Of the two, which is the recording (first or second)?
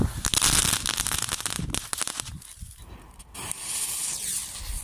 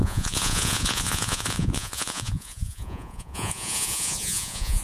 first